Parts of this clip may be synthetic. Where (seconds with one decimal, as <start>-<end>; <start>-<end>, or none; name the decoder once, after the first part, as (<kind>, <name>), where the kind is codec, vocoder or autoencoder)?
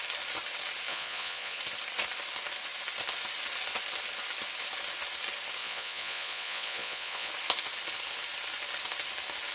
0.9-1.6 (vocoder, Vocos); 5.6-7.3